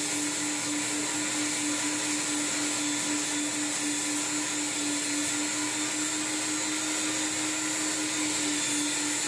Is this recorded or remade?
recorded